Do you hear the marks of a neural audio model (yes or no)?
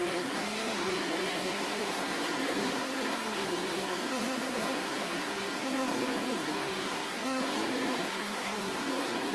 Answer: yes